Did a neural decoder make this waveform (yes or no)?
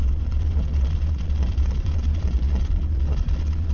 yes